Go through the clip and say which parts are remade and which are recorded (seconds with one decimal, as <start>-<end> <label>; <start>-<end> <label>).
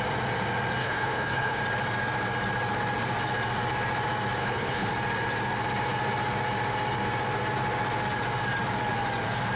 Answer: 0.0-0.8 recorded; 0.8-1.6 remade; 1.6-4.4 recorded; 4.4-4.9 remade; 4.9-9.6 recorded